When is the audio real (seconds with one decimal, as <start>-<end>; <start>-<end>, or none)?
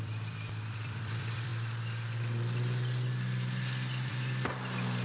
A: 1.5-4.1